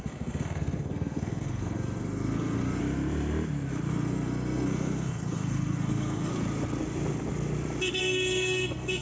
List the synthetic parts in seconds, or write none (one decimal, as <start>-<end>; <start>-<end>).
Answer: 0.0-2.8; 3.9-6.3; 8.0-9.0

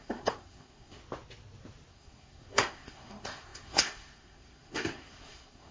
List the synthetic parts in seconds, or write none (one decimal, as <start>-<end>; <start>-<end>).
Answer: 0.0-1.0; 1.9-5.7

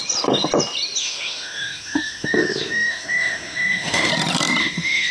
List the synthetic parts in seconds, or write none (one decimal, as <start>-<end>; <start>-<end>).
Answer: 1.0-4.1; 4.6-5.1

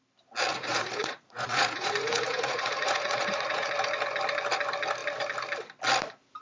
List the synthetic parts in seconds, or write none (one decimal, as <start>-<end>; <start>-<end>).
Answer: 0.5-3.7